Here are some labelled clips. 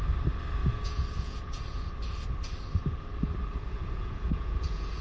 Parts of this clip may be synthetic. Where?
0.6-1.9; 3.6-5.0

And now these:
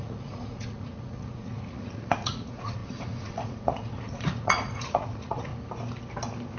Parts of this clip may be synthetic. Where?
0.0-5.5

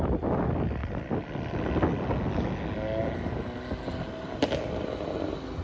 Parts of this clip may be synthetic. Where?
none